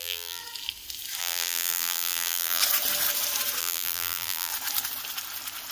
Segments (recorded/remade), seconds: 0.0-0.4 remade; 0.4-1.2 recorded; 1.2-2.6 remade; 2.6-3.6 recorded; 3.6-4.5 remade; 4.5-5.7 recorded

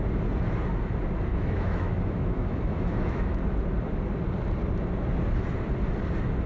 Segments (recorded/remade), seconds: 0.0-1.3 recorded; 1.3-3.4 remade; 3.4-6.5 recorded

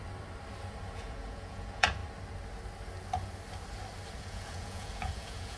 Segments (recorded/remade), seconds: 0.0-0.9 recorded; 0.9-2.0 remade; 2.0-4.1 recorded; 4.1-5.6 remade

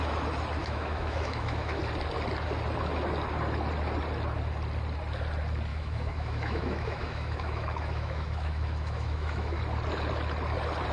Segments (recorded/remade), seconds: 0.0-0.6 recorded; 0.6-1.8 remade; 1.8-5.7 recorded; 5.7-9.6 remade; 9.6-10.9 recorded

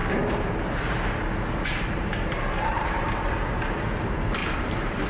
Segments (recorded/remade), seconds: 0.0-1.7 recorded; 1.7-5.1 remade